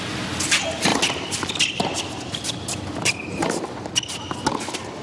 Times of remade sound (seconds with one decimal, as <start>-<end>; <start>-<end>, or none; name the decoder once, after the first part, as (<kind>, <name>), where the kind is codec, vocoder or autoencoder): 0.9-3.9 (vocoder, BigVGAN v2)